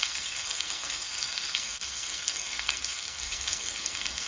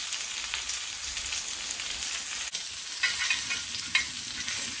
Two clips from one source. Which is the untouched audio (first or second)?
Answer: second